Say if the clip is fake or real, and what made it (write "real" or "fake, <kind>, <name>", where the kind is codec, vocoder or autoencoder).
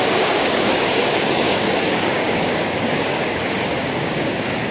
fake, codec, DAC